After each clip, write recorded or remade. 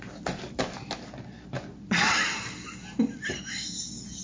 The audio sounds recorded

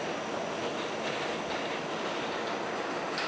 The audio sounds recorded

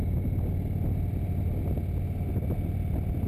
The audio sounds recorded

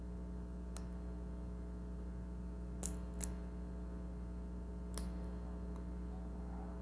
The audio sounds recorded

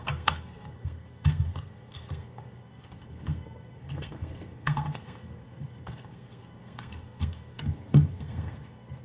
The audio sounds remade